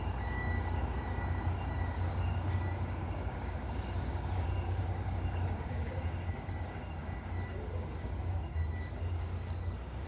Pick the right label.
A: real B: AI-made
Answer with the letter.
B